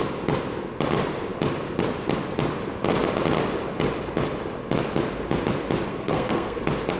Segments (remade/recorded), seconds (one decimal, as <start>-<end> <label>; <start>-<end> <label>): 0.0-5.9 recorded; 5.9-6.6 remade; 6.6-7.0 recorded

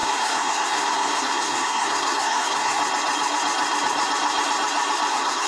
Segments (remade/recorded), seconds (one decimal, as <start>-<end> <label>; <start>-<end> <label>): 0.0-2.8 remade; 2.8-5.1 recorded; 5.1-5.5 remade